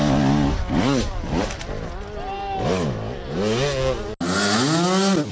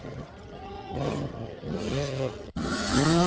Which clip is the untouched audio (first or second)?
first